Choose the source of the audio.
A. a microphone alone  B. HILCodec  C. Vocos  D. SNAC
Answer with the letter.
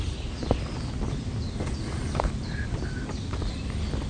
A